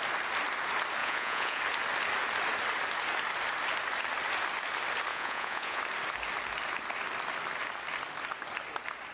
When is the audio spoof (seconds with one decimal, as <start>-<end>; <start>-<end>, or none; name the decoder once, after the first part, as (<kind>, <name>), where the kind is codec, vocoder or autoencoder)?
1.0-1.6 (vocoder, Vocos); 5.1-5.8